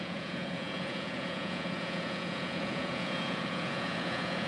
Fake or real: fake